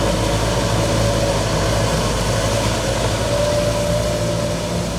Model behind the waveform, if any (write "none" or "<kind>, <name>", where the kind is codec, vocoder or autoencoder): none